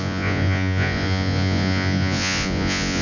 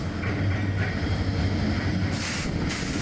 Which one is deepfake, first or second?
first